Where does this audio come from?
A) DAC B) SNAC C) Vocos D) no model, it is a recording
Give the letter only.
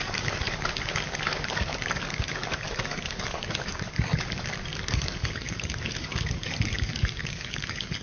A